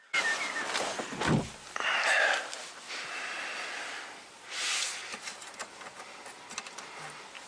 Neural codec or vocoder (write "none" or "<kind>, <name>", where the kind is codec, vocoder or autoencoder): none